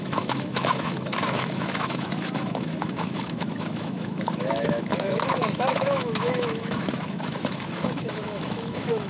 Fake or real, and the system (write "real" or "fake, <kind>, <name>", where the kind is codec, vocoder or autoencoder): fake, autoencoder, DAC-VAE